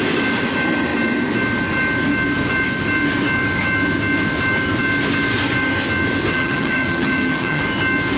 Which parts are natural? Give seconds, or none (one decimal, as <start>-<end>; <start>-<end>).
0.0-6.3; 7.6-8.2